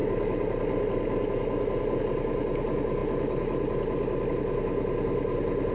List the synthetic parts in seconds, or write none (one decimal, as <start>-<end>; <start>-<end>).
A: none